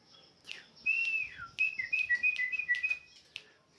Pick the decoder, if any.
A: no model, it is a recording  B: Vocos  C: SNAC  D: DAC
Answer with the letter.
A